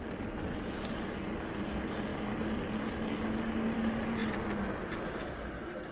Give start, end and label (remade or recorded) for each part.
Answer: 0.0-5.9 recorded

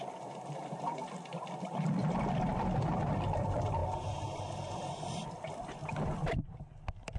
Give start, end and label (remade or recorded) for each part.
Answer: 0.0-3.8 remade; 3.8-4.7 recorded; 4.7-7.2 remade

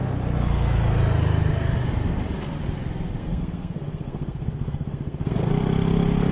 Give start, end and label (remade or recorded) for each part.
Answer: 0.0-3.2 recorded; 3.2-5.5 remade; 5.5-6.3 recorded

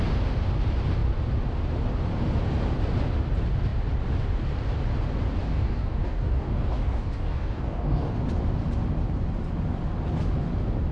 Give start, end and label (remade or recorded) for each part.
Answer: 0.0-5.4 recorded; 5.4-8.2 remade; 8.2-10.9 recorded